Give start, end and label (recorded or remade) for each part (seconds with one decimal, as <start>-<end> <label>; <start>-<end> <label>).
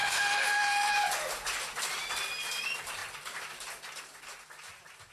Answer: 0.0-0.9 remade; 0.9-5.1 recorded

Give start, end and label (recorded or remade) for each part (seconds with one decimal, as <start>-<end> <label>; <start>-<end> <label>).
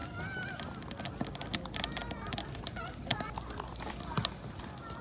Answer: 0.0-5.0 recorded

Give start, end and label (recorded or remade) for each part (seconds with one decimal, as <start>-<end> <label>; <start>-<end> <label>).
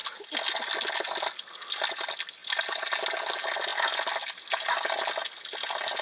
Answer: 0.0-6.0 recorded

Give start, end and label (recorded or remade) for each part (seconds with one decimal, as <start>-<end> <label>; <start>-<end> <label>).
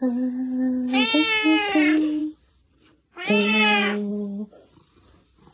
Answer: 0.0-3.4 recorded; 3.4-4.1 remade; 4.1-5.5 recorded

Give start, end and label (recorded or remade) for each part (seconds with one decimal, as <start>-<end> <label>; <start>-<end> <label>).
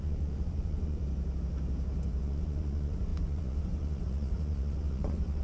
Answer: 0.0-1.0 remade; 1.0-2.2 recorded; 2.2-5.4 remade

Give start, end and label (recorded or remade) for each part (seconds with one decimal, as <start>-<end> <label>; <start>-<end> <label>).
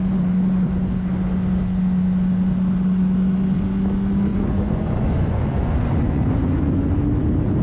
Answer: 0.0-4.3 recorded; 4.3-6.9 remade; 6.9-7.6 recorded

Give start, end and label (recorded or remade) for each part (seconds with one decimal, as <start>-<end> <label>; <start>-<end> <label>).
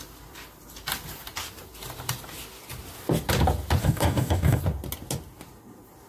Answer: 0.0-3.8 recorded; 3.8-4.6 remade; 4.6-6.1 recorded